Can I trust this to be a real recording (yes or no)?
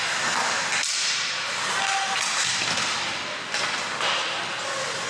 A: yes